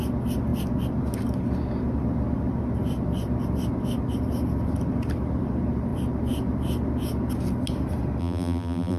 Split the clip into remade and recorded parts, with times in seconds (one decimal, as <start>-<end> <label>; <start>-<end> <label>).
0.0-8.2 recorded; 8.2-9.0 remade